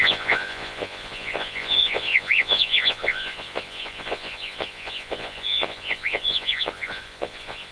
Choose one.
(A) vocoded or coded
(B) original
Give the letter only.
A